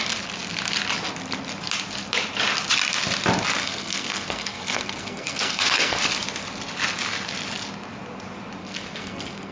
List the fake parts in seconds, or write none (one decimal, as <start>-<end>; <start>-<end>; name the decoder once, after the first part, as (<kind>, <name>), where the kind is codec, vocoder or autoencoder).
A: 3.6-6.0 (codec, SNAC); 8.6-9.5